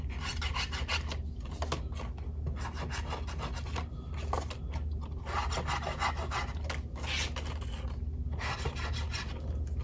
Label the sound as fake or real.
real